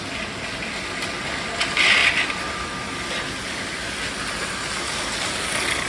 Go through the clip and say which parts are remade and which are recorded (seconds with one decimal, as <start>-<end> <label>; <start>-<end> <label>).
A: 0.0-5.9 recorded